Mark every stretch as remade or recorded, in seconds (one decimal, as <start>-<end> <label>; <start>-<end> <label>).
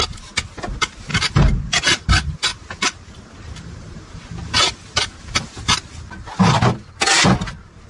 0.0-1.1 recorded; 1.1-2.1 remade; 2.1-2.5 recorded; 2.5-4.6 remade; 4.6-7.9 recorded